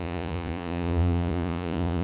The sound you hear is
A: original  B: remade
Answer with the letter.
B